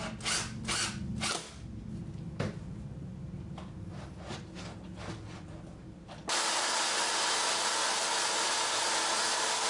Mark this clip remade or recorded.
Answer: recorded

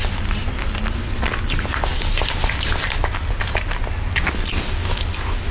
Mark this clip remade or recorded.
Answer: recorded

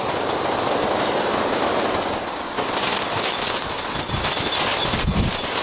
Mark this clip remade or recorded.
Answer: recorded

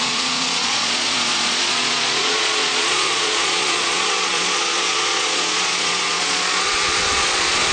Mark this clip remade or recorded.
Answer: remade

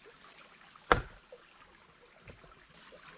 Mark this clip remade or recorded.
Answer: recorded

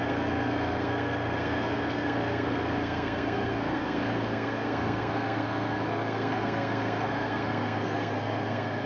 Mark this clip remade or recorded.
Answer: remade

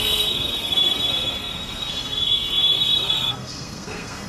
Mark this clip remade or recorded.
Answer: remade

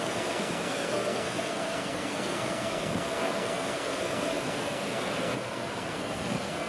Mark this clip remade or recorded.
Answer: remade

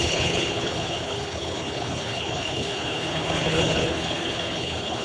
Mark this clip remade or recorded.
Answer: remade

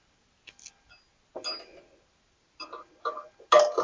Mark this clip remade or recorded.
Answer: recorded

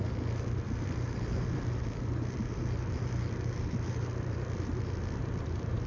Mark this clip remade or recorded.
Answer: remade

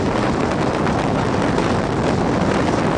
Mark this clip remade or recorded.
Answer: recorded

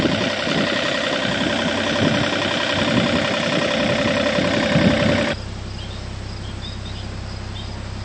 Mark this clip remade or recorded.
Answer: recorded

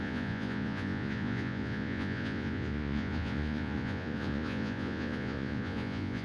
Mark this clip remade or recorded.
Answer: remade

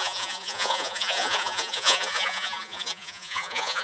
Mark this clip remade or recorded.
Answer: remade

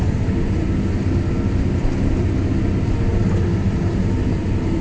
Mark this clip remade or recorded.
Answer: recorded